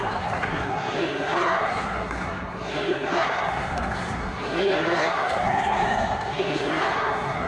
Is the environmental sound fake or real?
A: fake